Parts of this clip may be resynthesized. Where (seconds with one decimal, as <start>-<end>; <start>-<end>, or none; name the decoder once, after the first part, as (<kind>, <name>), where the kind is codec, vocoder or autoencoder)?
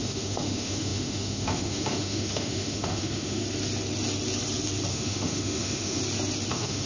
0.0-3.4 (autoencoder, DAC-VAE); 4.9-6.0; 6.5-6.9